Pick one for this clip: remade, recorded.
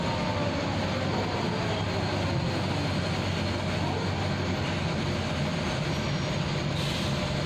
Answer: recorded